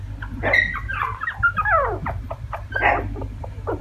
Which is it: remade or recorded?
recorded